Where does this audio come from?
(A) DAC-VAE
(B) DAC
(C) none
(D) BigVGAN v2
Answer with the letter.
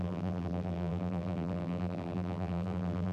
D